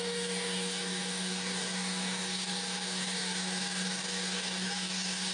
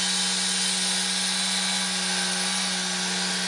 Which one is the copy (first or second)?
first